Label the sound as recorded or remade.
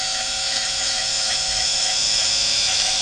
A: remade